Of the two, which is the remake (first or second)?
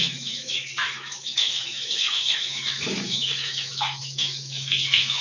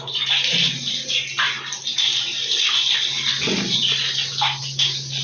first